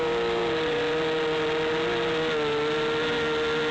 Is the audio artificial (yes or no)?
no